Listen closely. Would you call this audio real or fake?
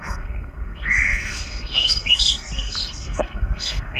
fake